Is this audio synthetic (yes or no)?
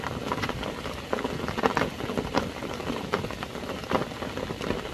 no